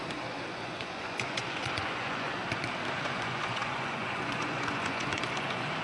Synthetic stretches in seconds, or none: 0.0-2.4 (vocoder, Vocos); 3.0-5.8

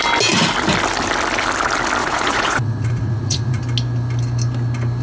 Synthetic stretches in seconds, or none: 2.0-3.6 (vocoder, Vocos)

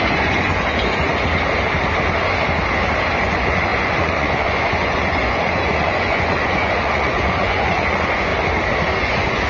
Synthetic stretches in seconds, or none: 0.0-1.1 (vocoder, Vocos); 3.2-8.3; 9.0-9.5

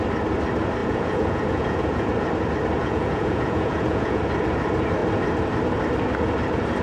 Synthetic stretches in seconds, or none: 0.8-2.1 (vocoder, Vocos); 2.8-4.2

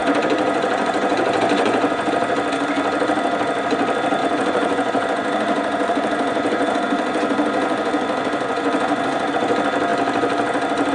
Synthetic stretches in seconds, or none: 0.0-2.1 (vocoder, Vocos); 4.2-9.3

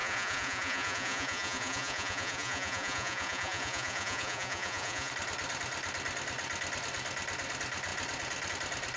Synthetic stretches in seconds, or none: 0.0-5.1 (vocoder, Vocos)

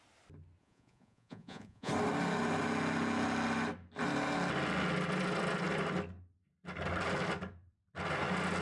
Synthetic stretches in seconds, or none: 0.6-1.9 (vocoder, Vocos)